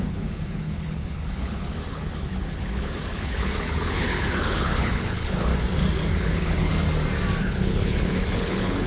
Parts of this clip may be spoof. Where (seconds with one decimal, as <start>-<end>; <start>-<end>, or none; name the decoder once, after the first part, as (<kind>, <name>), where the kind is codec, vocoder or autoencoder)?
0.0-5.5 (codec, HILCodec); 6.1-6.7; 7.4-8.9